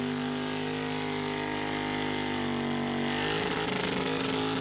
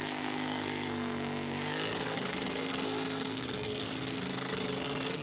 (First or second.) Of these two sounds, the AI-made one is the second